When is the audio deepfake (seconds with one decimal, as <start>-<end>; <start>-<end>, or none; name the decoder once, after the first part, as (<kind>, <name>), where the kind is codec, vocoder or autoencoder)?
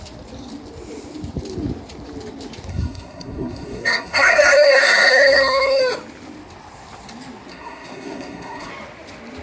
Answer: 2.7-5.8 (codec, SNAC); 7.5-8.7